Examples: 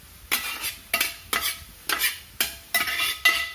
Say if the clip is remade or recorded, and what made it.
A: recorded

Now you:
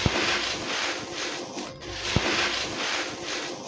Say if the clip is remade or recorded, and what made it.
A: recorded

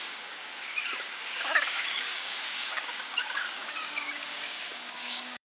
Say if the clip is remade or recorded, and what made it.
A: remade, codec, DAC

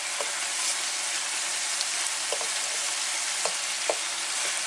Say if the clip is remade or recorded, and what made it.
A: recorded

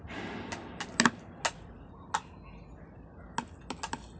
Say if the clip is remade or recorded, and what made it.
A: recorded